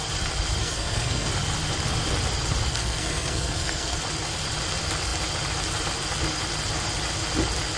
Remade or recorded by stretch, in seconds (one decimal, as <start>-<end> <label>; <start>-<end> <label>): 0.0-0.6 recorded; 0.6-1.3 remade; 1.3-2.7 recorded; 2.7-4.0 remade; 4.0-7.8 recorded